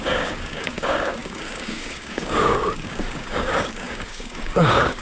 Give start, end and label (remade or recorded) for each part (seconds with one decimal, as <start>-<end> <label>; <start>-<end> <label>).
0.0-5.0 remade